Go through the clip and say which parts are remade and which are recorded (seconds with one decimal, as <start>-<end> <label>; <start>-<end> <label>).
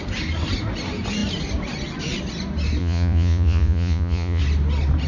0.0-2.8 recorded; 2.8-4.4 remade; 4.4-5.1 recorded